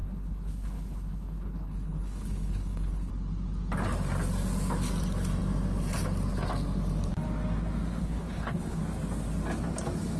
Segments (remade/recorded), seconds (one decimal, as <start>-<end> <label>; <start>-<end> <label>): 0.0-3.1 remade; 3.1-8.0 recorded; 8.0-8.8 remade; 8.8-10.2 recorded